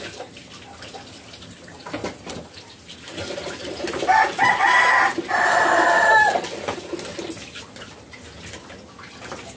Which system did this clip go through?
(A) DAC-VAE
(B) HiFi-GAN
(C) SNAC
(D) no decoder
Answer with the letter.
D